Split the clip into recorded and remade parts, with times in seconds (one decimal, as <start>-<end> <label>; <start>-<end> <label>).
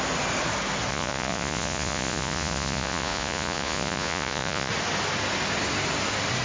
0.0-0.9 recorded; 0.9-4.7 remade; 4.7-6.4 recorded